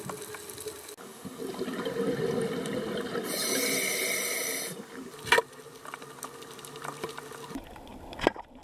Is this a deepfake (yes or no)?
no